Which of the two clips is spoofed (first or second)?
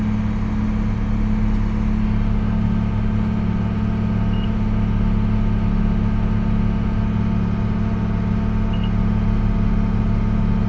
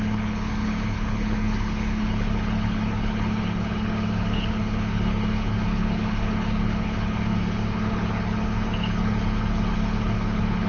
second